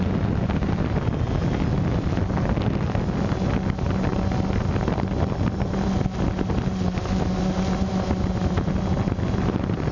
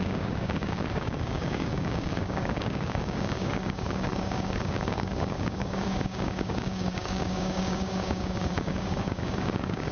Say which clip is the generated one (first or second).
second